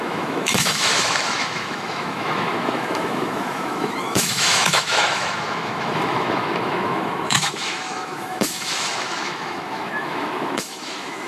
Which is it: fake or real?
fake